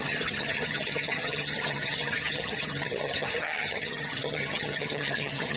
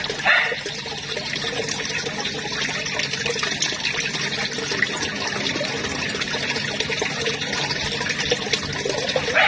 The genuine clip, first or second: second